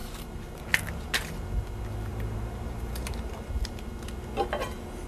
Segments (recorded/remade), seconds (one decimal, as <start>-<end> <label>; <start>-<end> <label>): 0.0-0.6 remade; 0.6-2.1 recorded; 2.1-3.5 remade; 3.5-5.1 recorded